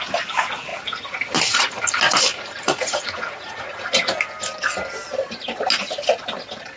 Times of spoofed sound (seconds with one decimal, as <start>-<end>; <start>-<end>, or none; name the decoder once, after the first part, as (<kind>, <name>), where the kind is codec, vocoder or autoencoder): 2.3-3.9 (vocoder, Vocos)